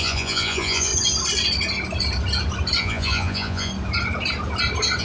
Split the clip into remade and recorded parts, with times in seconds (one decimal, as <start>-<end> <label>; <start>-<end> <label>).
0.0-0.9 remade; 0.9-2.8 recorded; 2.8-3.7 remade; 3.7-5.0 recorded